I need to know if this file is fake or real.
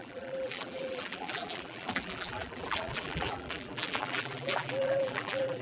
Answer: fake